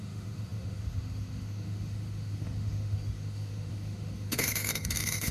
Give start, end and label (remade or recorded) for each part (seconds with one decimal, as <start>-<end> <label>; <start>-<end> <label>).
0.0-5.3 remade